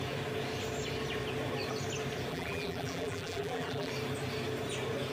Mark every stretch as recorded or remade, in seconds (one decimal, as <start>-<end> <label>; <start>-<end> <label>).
0.0-2.3 recorded; 2.3-3.9 remade; 3.9-5.1 recorded